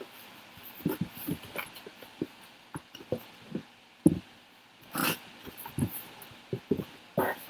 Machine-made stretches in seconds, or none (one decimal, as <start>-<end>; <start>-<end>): 1.9-4.5

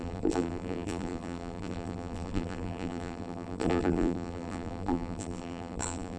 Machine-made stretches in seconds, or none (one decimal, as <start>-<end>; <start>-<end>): 0.0-6.2